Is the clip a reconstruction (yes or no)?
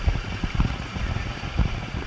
yes